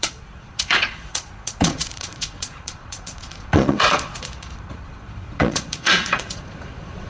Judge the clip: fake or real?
fake